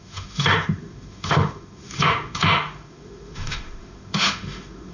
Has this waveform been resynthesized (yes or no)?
yes